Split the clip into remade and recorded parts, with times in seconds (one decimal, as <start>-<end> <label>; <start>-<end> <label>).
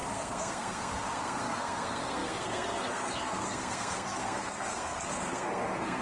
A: 0.0-6.0 remade